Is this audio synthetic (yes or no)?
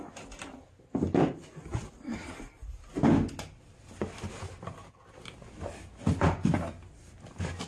no